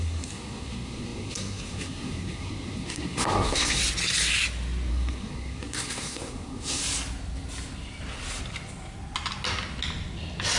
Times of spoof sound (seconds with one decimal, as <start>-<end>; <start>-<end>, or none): 0.0-3.8; 4.9-6.8